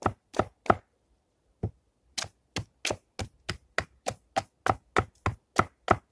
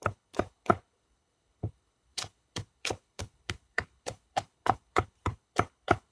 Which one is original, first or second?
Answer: first